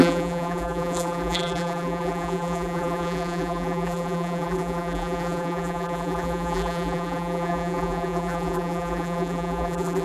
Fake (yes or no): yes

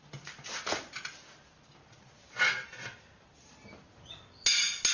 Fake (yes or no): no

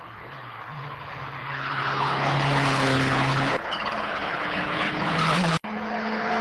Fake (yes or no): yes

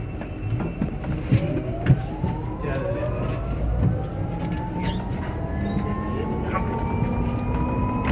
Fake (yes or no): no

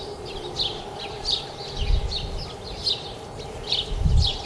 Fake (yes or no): no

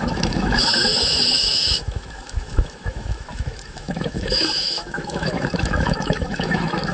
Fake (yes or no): yes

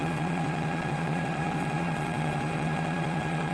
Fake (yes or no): yes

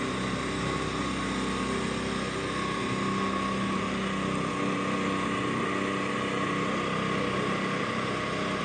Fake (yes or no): no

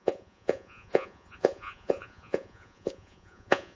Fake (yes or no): yes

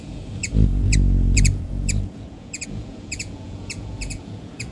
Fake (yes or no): yes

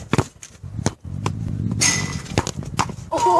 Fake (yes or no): no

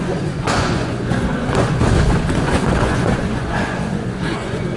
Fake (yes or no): yes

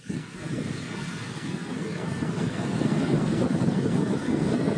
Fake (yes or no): yes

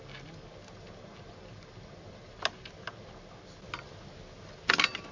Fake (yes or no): no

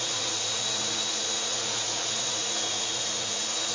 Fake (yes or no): yes